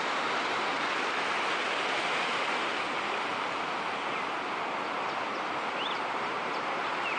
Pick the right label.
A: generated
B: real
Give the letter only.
B